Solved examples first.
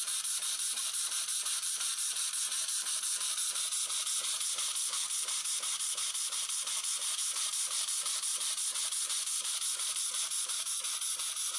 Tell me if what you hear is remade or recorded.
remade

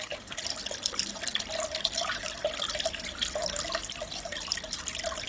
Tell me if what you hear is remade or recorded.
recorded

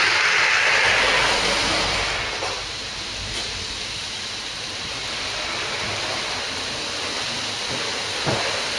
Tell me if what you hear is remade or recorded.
recorded